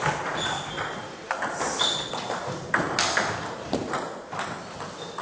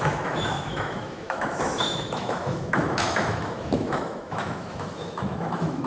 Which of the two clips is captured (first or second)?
first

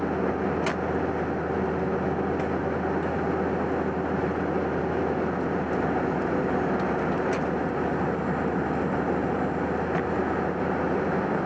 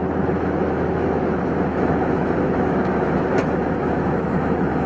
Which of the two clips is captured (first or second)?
first